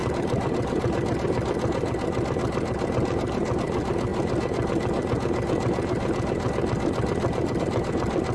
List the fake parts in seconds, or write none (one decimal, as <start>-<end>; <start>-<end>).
0.0-0.8

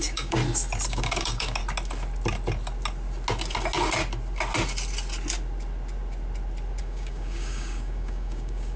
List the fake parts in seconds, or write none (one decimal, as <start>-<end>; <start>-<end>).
0.0-0.4; 0.9-1.6; 6.8-8.8

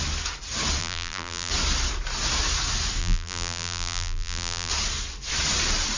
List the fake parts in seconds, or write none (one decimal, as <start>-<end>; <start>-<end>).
0.8-1.5; 3.0-4.7

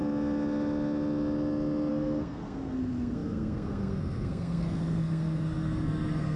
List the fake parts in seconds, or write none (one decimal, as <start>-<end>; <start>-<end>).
1.9-6.4